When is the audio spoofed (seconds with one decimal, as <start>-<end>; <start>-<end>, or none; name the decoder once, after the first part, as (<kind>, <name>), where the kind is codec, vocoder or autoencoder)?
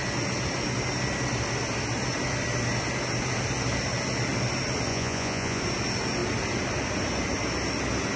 4.9-5.6 (vocoder, Vocos)